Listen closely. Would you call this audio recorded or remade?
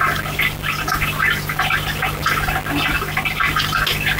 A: recorded